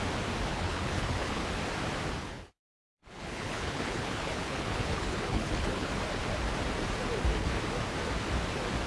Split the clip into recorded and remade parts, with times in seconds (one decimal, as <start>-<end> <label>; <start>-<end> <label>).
0.0-0.5 recorded; 0.5-1.4 remade; 1.4-2.2 recorded; 2.2-5.9 remade; 5.9-8.9 recorded